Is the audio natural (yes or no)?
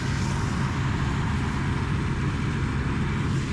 yes